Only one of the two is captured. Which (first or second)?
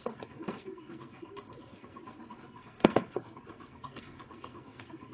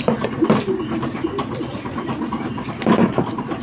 second